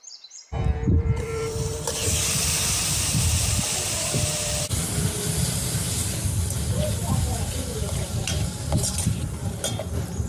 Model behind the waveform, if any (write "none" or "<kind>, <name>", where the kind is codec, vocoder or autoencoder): vocoder, BigVGAN v2